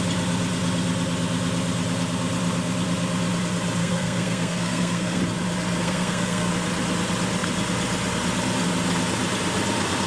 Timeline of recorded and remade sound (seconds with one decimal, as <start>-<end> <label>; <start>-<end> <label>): 0.0-3.8 recorded; 3.8-5.2 remade; 5.2-5.8 recorded; 5.8-6.5 remade; 6.5-10.1 recorded